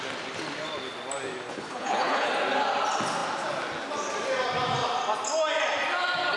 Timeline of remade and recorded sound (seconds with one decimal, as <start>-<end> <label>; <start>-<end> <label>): 0.0-1.5 recorded; 1.5-2.3 remade; 2.3-6.4 recorded